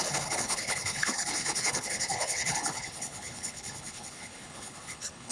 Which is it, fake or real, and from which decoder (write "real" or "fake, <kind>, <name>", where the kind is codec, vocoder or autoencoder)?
fake, codec, HILCodec